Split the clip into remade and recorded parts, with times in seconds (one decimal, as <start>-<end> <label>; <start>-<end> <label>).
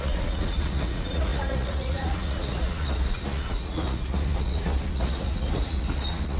0.0-6.4 remade